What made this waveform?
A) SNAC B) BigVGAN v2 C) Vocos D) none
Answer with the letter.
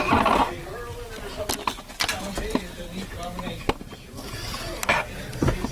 D